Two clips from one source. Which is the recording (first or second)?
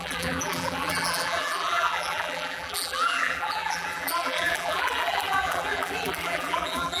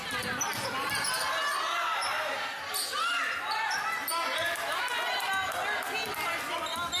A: second